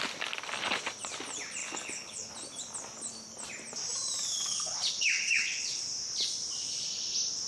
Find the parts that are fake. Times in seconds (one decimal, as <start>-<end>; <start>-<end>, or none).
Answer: 1.6-2.3; 4.3-5.8